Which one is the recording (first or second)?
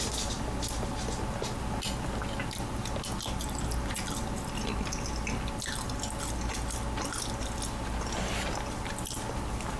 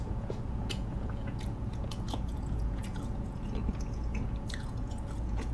first